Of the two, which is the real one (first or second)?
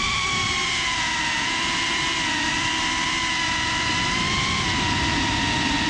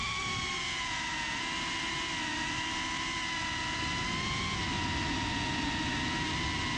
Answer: second